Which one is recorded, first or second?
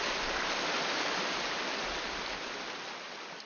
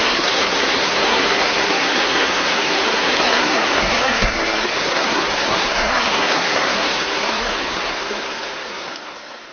first